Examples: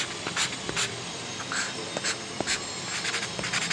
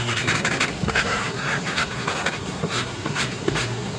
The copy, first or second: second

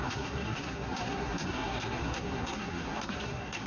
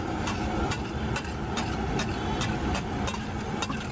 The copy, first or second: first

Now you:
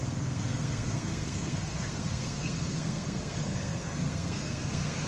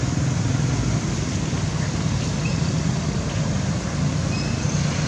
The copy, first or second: first